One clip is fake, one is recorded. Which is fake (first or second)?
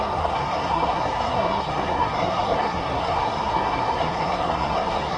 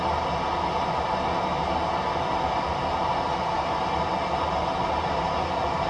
first